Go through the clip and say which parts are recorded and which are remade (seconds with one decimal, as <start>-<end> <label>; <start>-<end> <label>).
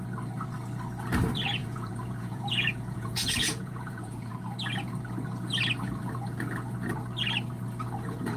0.0-1.6 recorded; 1.6-4.3 remade; 4.3-8.4 recorded